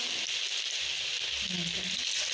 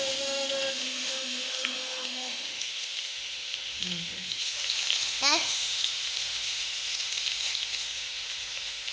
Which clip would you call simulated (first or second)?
second